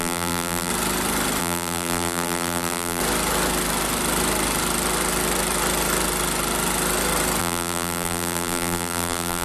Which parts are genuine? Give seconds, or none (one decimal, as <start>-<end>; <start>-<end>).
0.7-1.4; 3.0-7.4